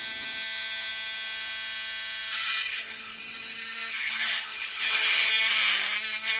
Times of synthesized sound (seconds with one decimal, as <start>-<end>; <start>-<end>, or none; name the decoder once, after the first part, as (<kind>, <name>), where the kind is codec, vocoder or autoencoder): 2.7-3.2 (codec, HILCodec); 3.9-5.3